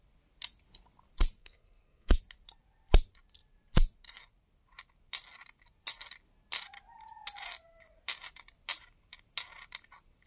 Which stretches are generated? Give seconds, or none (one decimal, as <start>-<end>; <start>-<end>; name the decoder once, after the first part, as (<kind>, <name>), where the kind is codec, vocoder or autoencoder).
1.4-2.2 (codec, SNAC)